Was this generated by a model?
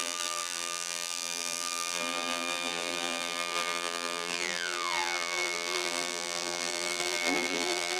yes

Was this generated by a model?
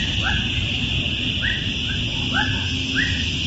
no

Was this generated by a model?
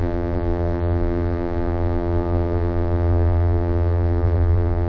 yes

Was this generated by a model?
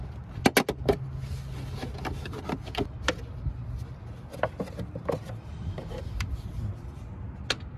no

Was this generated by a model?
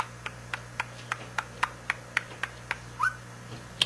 no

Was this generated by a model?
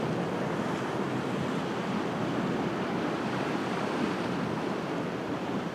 no